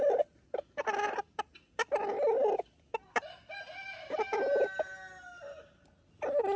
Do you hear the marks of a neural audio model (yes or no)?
no